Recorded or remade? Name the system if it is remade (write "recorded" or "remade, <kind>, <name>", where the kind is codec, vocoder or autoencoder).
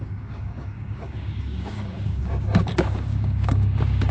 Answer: remade, codec, DAC